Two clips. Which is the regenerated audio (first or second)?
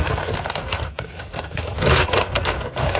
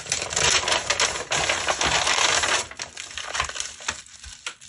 first